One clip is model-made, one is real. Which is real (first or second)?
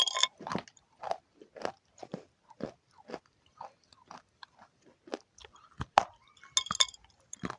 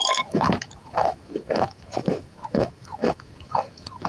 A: first